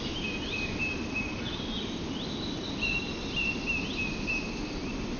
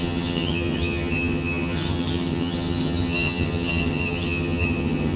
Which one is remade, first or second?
second